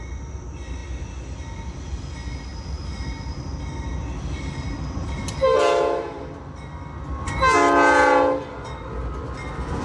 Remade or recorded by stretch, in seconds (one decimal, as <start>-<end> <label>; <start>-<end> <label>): 0.0-9.8 recorded